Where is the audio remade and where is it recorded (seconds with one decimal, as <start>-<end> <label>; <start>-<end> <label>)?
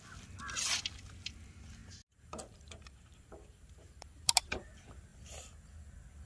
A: 0.0-1.8 recorded; 1.8-4.5 remade; 4.5-5.1 recorded; 5.1-5.7 remade; 5.7-6.3 recorded